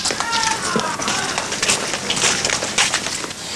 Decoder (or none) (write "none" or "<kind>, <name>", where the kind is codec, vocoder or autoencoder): none